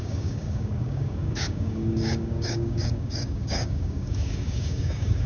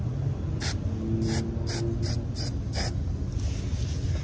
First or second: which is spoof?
first